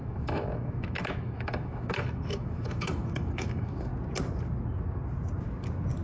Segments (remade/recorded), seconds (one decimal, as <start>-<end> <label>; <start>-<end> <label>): 0.0-3.9 remade; 3.9-6.0 recorded